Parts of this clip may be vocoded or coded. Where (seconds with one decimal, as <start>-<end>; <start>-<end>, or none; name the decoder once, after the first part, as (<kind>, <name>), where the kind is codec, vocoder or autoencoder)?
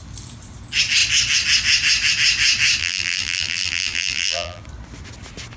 2.8-4.6 (vocoder, BigVGAN v2)